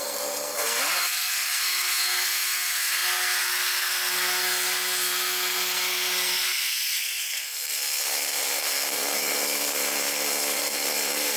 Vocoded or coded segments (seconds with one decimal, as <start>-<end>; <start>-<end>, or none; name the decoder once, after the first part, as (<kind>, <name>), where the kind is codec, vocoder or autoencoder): 0.0-11.4 (codec, SNAC)